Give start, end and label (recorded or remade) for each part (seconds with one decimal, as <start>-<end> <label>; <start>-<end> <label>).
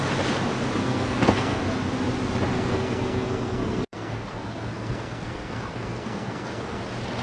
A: 0.0-0.8 recorded; 0.8-1.6 remade; 1.6-2.5 recorded; 2.5-6.8 remade; 6.8-7.2 recorded